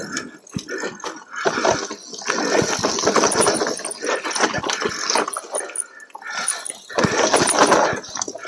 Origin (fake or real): real